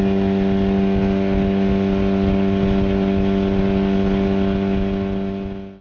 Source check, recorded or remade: recorded